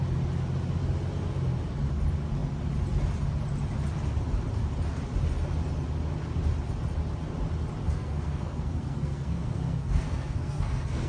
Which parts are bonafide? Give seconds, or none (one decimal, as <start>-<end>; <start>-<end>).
0.0-7.8